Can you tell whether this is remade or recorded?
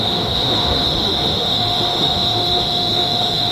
remade